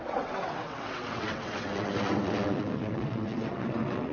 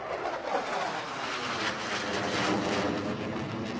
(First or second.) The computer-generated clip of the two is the first